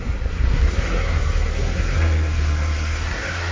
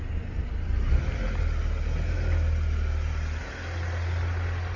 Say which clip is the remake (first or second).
first